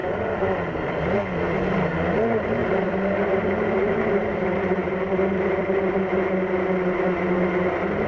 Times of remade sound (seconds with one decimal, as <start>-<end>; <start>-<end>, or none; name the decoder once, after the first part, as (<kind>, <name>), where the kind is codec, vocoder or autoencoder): 0.0-1.0 (vocoder, BigVGAN v2); 2.6-6.0